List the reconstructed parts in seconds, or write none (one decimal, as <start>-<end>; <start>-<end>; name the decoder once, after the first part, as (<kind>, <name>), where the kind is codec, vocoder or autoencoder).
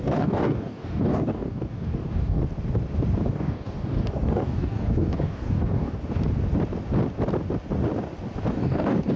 0.0-2.4 (codec, DAC); 3.3-6.0; 8.5-9.2